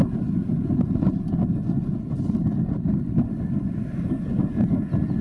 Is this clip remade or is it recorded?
recorded